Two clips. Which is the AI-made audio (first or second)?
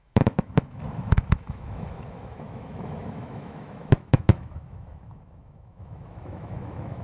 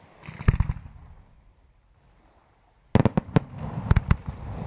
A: first